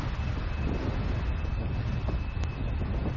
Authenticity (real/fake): real